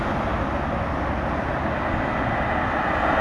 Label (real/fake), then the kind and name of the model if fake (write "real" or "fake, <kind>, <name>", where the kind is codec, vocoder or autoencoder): real